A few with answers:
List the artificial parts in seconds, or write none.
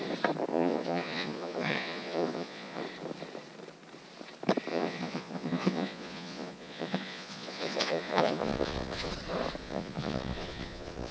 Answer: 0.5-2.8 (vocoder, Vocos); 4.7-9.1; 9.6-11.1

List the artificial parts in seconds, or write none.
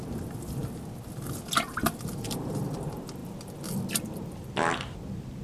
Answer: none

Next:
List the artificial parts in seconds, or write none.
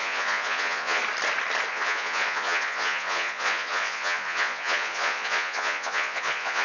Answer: 0.0-1.0 (vocoder, Vocos); 1.7-6.6